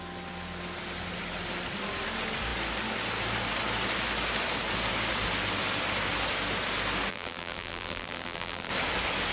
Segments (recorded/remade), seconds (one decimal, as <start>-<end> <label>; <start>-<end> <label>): 0.0-7.1 recorded; 7.1-8.7 remade; 8.7-9.3 recorded